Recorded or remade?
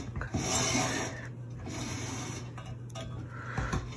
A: recorded